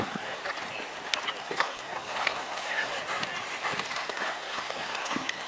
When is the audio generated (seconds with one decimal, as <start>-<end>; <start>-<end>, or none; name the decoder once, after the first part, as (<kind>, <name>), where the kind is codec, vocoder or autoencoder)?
0.0-0.4 (codec, SNAC); 1.4-2.9; 3.9-5.5